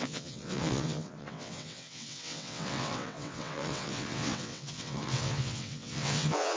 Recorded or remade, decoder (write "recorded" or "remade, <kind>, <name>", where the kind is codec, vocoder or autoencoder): remade, vocoder, WaveNeXt